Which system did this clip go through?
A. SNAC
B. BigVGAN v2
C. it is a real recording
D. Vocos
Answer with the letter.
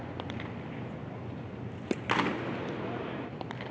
C